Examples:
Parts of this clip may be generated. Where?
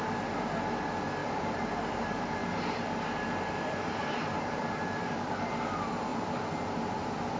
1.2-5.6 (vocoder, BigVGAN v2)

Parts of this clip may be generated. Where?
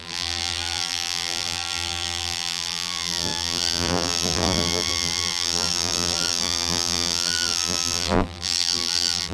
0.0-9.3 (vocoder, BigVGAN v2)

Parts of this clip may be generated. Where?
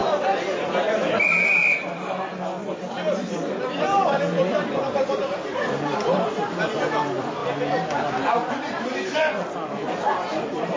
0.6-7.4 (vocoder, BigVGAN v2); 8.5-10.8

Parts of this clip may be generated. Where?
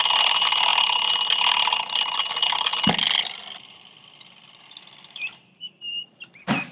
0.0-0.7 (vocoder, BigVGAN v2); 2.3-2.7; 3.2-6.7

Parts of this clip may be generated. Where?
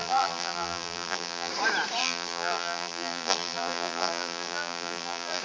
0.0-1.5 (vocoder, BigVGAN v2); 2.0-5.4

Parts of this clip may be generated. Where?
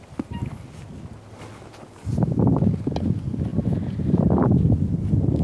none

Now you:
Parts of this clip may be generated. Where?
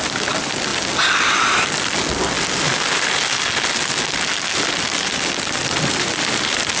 5.6-6.8 (vocoder, BigVGAN v2)